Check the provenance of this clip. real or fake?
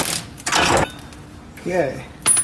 real